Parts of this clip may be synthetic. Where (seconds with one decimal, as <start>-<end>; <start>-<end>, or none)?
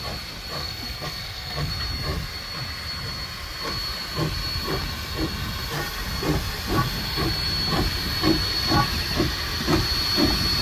0.6-1.7